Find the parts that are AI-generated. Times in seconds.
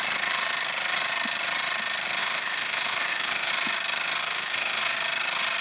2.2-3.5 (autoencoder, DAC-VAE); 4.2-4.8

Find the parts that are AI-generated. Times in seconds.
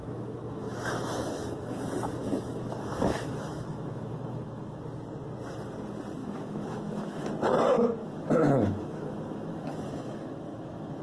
0.0-4.8 (autoencoder, DAC-VAE); 6.2-7.3; 8.0-11.0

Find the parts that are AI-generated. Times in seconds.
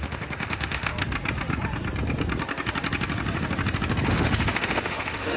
0.0-0.9 (autoencoder, DAC-VAE); 4.1-5.4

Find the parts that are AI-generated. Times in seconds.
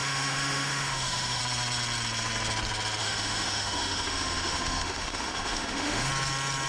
0.0-1.4 (autoencoder, DAC-VAE); 3.0-6.1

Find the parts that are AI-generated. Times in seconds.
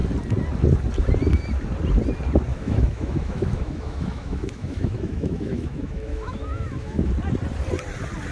2.5-7.1 (autoencoder, DAC-VAE)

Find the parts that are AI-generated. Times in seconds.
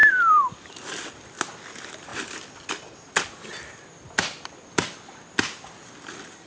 none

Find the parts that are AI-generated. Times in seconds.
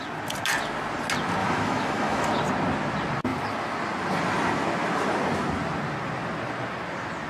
1.4-2.3 (autoencoder, DAC-VAE)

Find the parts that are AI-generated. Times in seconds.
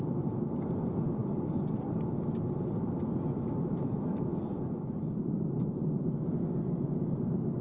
none